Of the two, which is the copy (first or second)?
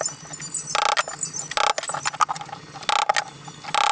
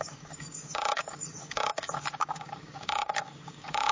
second